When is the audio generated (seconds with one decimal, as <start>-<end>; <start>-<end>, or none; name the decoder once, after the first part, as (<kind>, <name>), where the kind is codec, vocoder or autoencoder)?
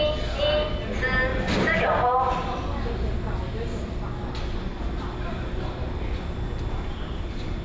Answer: none